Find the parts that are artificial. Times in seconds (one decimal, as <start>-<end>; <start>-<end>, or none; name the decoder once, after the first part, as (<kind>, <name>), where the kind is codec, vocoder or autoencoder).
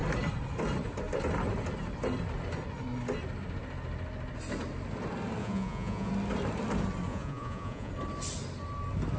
5.4-6.1 (vocoder, Vocos); 7.1-7.9